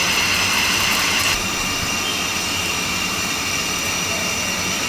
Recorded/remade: recorded